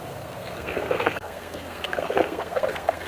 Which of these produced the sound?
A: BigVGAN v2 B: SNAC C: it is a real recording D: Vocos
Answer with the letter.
B